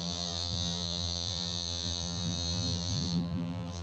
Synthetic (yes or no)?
yes